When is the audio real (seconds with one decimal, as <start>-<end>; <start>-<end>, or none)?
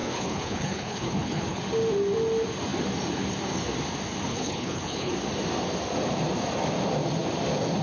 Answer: 1.6-4.3; 5.1-7.8